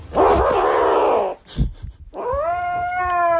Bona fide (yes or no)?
yes